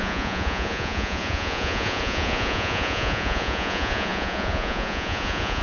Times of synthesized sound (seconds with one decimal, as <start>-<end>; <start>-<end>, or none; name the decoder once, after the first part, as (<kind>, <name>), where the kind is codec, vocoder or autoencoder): 0.0-5.6 (vocoder, Vocos)